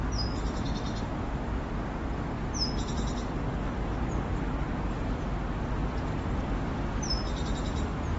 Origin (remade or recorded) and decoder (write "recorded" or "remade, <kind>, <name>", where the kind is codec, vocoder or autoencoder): recorded